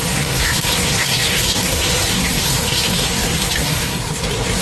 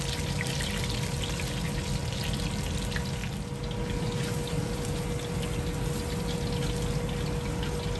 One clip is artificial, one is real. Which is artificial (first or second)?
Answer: first